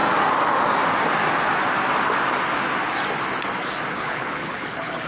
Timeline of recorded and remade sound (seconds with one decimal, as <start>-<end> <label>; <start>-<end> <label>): 0.0-3.9 recorded; 3.9-5.1 remade